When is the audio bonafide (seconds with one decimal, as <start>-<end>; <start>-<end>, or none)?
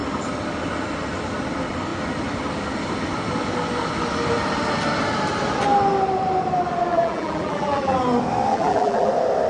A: 0.0-6.9; 8.0-8.5; 9.1-9.5